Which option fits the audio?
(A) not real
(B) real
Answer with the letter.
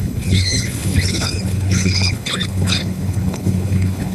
A